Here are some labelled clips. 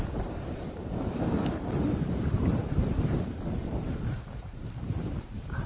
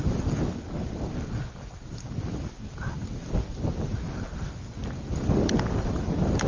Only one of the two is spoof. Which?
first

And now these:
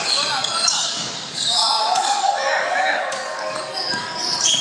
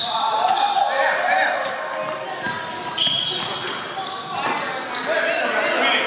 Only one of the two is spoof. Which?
first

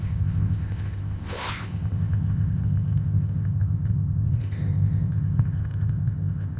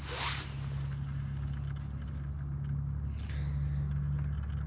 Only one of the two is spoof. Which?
first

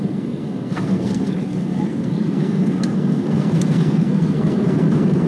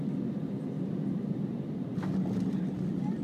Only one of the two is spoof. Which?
first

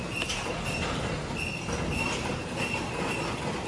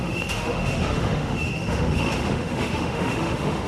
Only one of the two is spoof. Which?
second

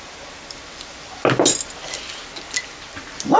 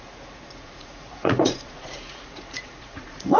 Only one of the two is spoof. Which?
second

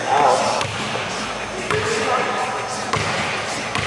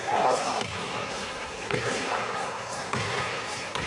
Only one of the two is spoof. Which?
second